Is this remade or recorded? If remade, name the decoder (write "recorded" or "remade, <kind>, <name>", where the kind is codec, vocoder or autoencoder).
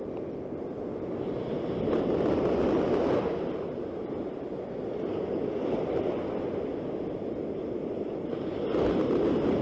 recorded